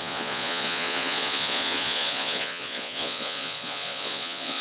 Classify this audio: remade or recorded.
remade